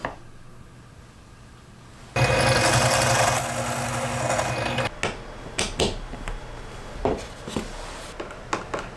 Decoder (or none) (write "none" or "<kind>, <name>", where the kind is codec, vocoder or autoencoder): none